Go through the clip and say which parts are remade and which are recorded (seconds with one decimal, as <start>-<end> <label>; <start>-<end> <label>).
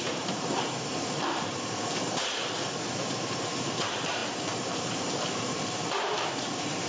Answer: 0.0-6.9 remade